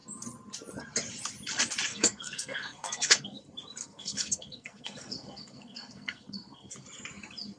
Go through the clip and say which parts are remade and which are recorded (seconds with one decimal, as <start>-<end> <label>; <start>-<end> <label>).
0.0-1.9 recorded; 1.9-3.4 remade; 3.4-3.8 recorded; 3.8-6.7 remade; 6.7-7.6 recorded